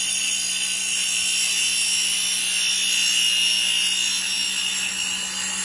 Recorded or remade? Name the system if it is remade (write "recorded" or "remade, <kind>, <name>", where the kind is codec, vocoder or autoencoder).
recorded